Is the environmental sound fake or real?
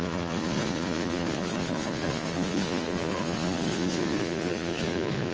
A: fake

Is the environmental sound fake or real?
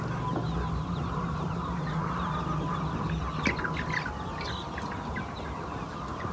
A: real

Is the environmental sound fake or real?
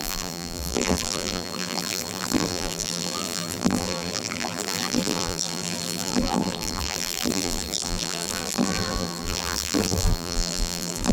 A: fake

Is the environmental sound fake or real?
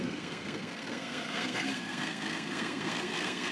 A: fake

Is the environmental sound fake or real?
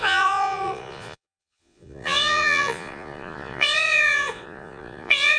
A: fake